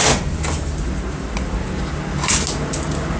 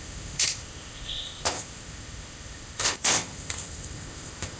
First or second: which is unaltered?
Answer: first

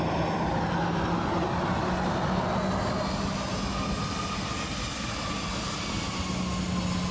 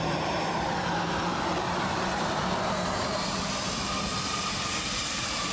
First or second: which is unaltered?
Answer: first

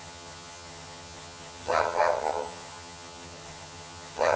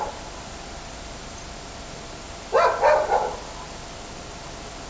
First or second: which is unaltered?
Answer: second